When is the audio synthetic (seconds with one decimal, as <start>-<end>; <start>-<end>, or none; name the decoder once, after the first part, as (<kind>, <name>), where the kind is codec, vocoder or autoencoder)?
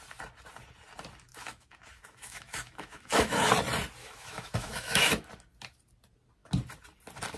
1.3-3.5 (autoencoder, DAC-VAE); 4.0-5.3